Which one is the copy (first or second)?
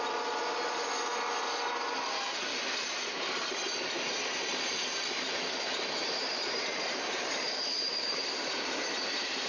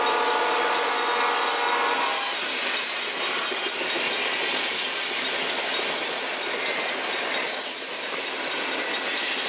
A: first